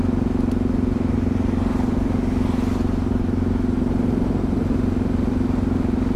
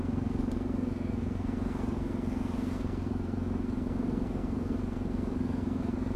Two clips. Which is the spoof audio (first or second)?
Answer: second